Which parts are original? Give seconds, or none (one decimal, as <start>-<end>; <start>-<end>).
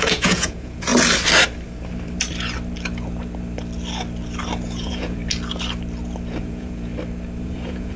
0.9-4.6; 5.2-6.4; 6.9-7.4